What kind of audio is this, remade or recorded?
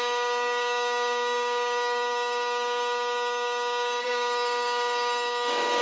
remade